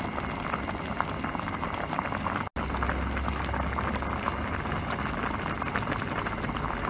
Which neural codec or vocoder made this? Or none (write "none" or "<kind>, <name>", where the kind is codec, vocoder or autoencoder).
none